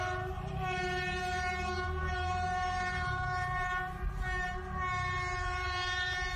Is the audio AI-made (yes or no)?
yes